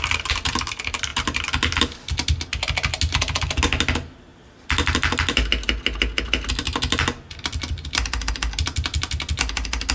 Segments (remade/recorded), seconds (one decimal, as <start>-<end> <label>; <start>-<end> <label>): 0.0-9.9 recorded

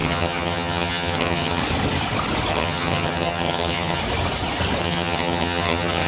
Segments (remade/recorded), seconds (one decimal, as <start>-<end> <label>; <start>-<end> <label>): 0.0-1.6 remade; 1.6-2.5 recorded; 2.5-4.0 remade; 4.0-4.8 recorded; 4.8-6.1 remade

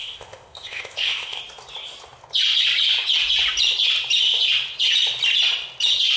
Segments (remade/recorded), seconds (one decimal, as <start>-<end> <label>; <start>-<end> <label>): 0.0-1.4 remade; 1.4-6.2 recorded

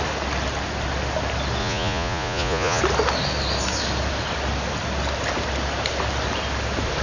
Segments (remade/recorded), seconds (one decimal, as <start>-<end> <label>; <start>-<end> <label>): 0.0-1.6 recorded; 1.6-2.8 remade; 2.8-7.0 recorded